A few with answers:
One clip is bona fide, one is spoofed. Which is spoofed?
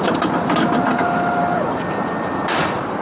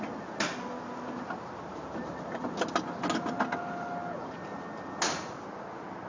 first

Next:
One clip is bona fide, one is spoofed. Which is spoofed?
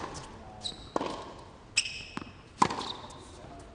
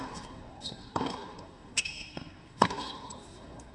second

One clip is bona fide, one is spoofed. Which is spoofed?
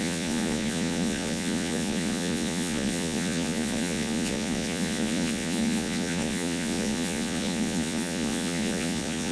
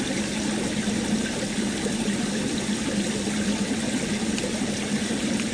first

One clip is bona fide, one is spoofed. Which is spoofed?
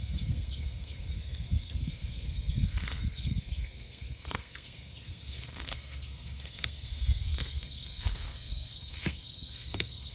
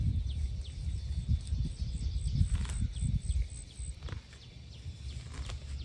first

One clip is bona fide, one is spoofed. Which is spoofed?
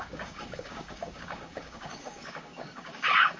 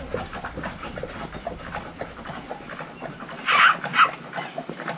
first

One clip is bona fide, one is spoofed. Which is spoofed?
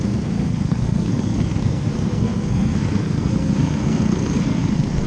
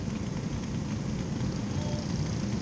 first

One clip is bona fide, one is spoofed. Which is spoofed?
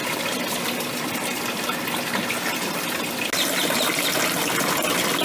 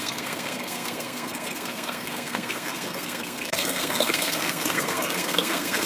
second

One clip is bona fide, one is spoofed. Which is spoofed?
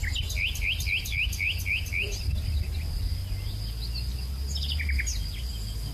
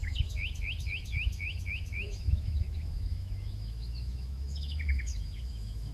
second